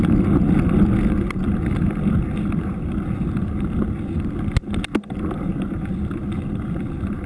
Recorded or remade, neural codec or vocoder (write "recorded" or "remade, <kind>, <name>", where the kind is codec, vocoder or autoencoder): recorded